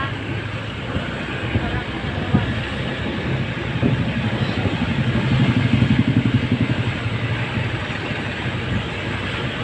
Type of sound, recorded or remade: recorded